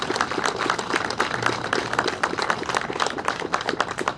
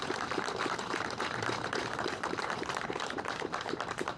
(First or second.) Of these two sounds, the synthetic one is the second